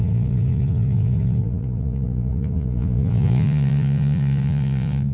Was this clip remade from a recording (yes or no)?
yes